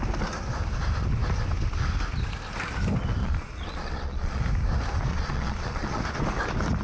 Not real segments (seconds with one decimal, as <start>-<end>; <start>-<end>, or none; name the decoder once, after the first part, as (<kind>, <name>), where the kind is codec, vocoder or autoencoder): 3.2-4.4 (vocoder, Vocos); 5.1-6.0